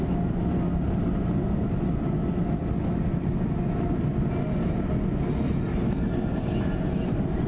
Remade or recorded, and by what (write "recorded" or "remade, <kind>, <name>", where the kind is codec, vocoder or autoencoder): recorded